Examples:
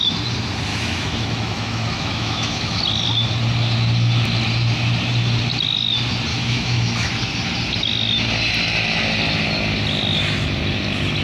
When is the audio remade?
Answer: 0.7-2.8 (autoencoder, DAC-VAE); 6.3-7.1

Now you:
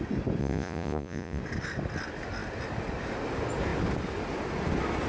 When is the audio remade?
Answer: 0.4-1.4 (vocoder, Vocos)

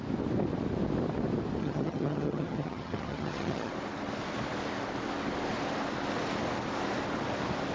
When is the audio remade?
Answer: 1.6-3.7 (vocoder, HiFi-GAN)

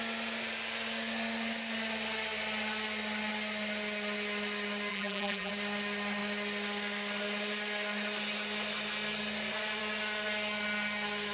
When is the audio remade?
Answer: 4.9-5.5 (vocoder, BigVGAN v2)

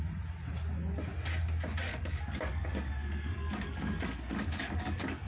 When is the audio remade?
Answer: 1.9-5.3 (codec, DAC)